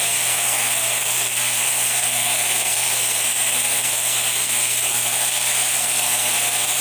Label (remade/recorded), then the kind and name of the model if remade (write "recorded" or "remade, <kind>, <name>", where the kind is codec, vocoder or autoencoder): remade, codec, SNAC